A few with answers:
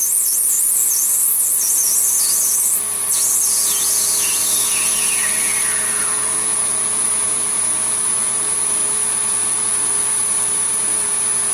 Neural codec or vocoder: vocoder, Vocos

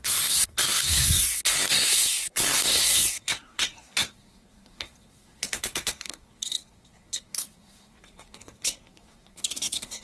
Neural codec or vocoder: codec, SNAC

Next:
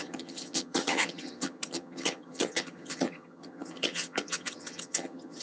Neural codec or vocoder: vocoder, HiFi-GAN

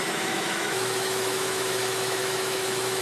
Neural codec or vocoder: autoencoder, DAC-VAE